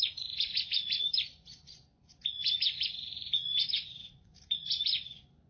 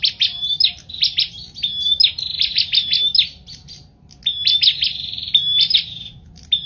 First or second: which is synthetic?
first